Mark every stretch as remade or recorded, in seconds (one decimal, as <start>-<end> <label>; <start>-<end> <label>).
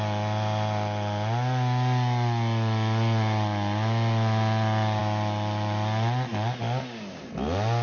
0.0-7.8 recorded